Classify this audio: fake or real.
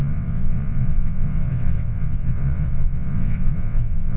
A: fake